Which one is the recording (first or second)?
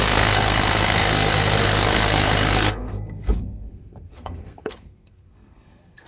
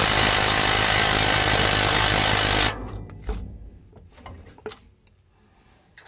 second